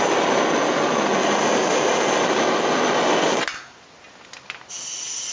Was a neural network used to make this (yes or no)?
no